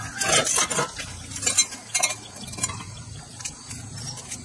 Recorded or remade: recorded